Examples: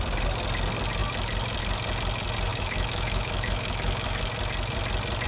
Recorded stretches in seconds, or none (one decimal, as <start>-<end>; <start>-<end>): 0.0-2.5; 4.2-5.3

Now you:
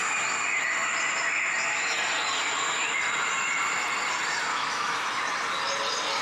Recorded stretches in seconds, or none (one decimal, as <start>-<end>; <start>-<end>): 0.0-4.5; 5.2-6.2

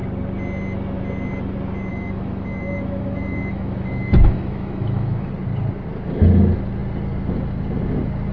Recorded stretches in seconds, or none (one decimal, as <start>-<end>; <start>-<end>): 0.0-1.9; 5.3-8.3